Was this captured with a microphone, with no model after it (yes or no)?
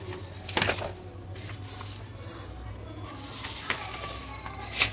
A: yes